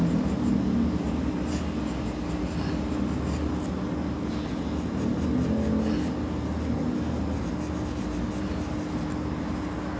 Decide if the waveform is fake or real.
real